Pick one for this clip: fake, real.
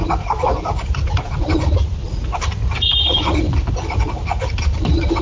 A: real